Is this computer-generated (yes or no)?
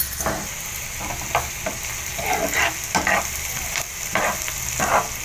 no